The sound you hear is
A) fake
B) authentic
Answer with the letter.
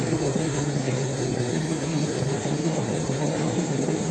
A